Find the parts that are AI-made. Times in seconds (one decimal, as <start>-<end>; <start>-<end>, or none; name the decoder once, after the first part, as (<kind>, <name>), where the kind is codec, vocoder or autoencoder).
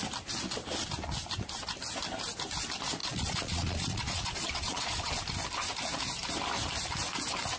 3.0-5.2 (vocoder, Vocos)